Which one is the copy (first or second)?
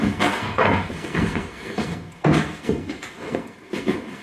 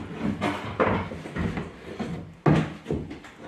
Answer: first